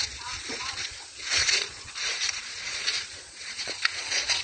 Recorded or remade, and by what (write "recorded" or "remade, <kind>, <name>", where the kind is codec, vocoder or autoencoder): remade, vocoder, Vocos